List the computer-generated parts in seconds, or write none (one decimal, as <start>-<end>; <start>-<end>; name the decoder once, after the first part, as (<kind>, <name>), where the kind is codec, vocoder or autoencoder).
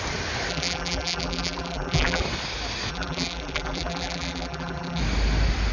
0.5-2.2 (vocoder, BigVGAN v2); 2.9-5.0